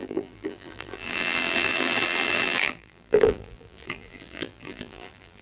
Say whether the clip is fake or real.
fake